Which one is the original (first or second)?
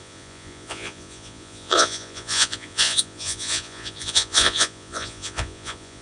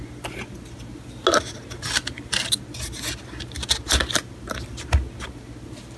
second